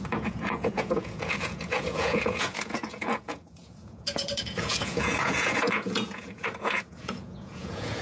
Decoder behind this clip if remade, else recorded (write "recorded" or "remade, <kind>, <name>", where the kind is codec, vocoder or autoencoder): remade, vocoder, Vocos